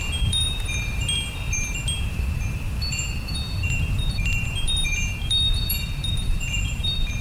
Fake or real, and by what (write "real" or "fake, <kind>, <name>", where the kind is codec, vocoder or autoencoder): fake, vocoder, BigVGAN v2